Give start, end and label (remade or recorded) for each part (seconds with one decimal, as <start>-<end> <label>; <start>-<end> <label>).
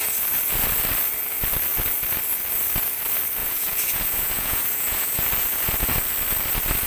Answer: 0.0-3.4 recorded; 3.4-5.2 remade; 5.2-6.9 recorded